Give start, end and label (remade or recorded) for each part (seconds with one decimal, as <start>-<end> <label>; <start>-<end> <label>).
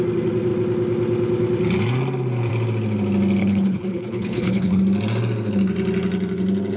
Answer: 0.0-3.4 recorded; 3.4-4.8 remade; 4.8-6.8 recorded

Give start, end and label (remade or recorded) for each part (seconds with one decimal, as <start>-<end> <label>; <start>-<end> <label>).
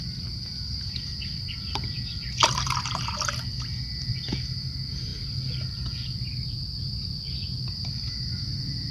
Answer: 0.0-1.1 recorded; 1.1-1.6 remade; 1.6-8.9 recorded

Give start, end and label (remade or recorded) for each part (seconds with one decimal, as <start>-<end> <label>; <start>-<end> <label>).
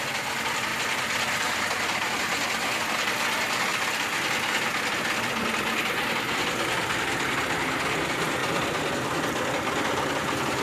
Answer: 0.0-0.7 recorded; 0.7-2.8 remade; 2.8-8.4 recorded; 8.4-10.6 remade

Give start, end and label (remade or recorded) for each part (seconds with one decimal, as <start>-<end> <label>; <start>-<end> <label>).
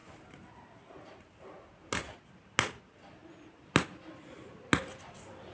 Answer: 0.0-5.5 recorded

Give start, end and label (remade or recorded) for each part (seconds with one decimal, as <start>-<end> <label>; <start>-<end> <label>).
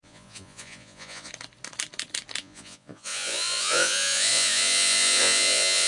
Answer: 0.0-1.3 remade; 1.3-2.4 recorded; 2.4-5.9 remade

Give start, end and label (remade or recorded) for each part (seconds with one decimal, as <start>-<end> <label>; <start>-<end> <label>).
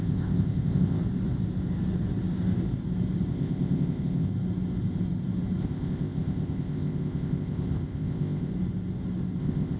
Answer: 0.0-1.0 remade; 1.0-3.3 recorded; 3.3-4.3 remade; 4.3-5.6 recorded; 5.6-8.5 remade; 8.5-9.4 recorded; 9.4-9.8 remade